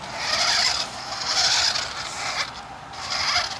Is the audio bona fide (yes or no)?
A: yes